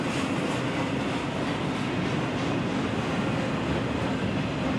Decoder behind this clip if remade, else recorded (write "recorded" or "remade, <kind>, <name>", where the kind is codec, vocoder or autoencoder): recorded